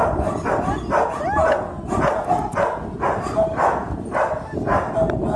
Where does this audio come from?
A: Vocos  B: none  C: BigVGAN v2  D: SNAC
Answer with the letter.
B